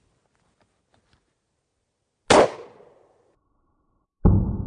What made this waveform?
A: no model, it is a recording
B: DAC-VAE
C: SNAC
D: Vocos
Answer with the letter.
A